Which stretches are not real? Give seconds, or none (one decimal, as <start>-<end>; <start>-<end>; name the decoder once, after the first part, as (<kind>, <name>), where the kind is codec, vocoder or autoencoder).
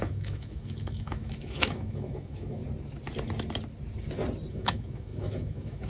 0.0-2.6 (autoencoder, DAC-VAE); 4.5-5.9